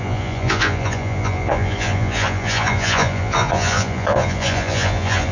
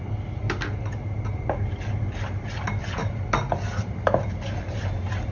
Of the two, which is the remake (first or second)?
first